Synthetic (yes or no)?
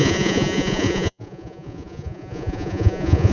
yes